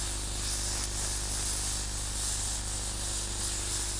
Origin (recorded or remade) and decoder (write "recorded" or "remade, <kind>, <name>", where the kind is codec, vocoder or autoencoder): recorded